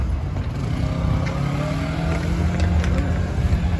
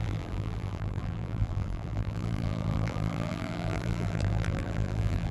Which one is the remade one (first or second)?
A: second